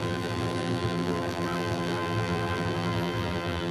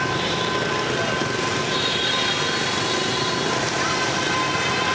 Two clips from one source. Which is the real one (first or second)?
second